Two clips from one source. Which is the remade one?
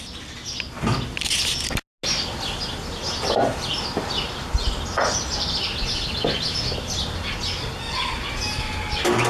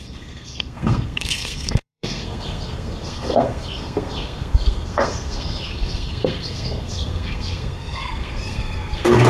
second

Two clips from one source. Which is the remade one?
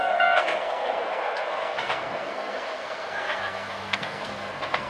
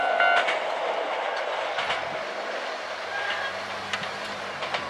first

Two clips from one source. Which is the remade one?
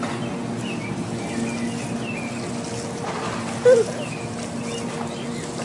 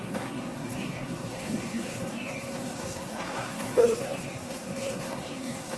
second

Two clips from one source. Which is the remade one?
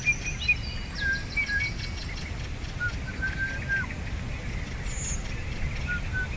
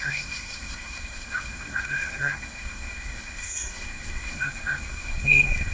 second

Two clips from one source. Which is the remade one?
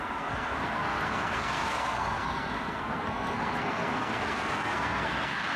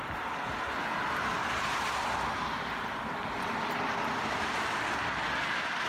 first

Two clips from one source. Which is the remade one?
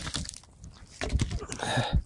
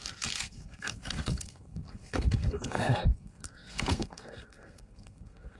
second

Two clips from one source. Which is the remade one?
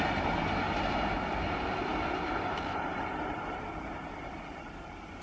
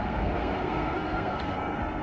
second